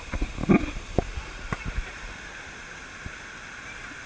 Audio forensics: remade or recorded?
recorded